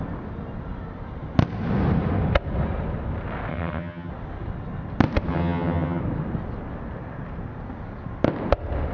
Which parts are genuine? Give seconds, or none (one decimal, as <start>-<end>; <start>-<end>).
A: 0.0-3.5; 4.1-5.3; 6.0-8.9